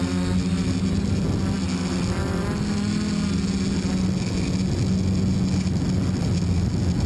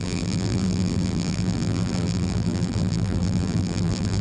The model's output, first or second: second